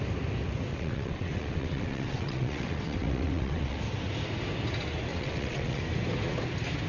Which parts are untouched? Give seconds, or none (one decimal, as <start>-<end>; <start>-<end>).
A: 0.0-0.7; 3.8-5.1; 5.8-6.9